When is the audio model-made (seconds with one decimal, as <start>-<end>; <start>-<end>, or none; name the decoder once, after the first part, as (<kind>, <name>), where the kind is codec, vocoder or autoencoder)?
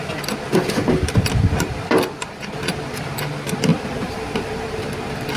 3.7-5.4 (vocoder, BigVGAN v2)